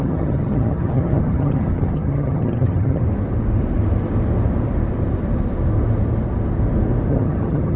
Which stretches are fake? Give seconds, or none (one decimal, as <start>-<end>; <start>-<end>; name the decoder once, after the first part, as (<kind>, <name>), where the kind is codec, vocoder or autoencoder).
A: 0.0-3.0 (vocoder, HiFi-GAN); 7.1-7.8